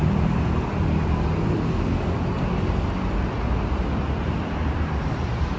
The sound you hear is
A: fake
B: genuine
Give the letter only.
B